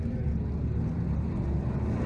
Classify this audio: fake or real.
real